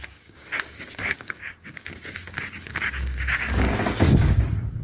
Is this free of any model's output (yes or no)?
no